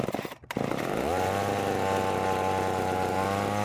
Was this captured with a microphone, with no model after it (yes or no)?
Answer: yes